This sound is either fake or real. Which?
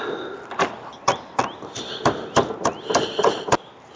real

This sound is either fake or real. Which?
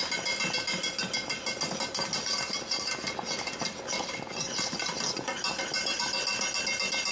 real